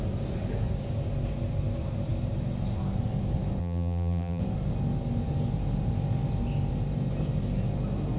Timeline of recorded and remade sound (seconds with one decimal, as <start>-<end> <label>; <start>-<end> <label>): 0.0-3.6 recorded; 3.6-4.4 remade; 4.4-8.2 recorded